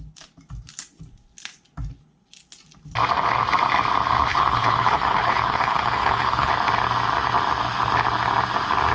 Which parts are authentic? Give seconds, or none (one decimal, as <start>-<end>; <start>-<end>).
0.0-4.3; 6.5-8.9